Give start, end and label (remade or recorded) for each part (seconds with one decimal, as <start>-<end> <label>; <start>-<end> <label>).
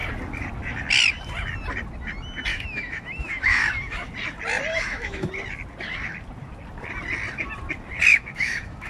0.0-2.5 recorded; 2.5-4.1 remade; 4.1-4.7 recorded; 4.7-5.3 remade; 5.3-8.1 recorded; 8.1-8.9 remade